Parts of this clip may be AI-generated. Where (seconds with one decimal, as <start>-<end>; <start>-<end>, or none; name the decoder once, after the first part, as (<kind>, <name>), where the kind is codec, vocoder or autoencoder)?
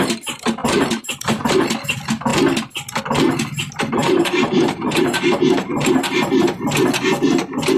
0.6-1.5 (vocoder, BigVGAN v2); 4.0-6.8